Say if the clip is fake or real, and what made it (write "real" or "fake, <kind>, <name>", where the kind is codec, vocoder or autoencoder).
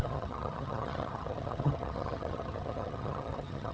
fake, vocoder, HiFi-GAN